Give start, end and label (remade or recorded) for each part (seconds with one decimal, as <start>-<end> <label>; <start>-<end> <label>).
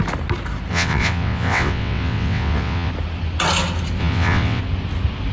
0.0-0.7 recorded; 0.7-2.9 remade; 2.9-4.0 recorded; 4.0-4.6 remade; 4.6-5.3 recorded